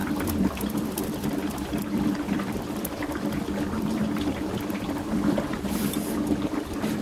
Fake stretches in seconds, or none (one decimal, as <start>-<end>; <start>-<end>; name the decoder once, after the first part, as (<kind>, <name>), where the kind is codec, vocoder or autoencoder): 0.0-7.0 (vocoder, BigVGAN v2)